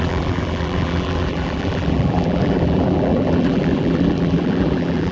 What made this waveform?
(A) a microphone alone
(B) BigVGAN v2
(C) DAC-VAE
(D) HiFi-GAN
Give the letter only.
B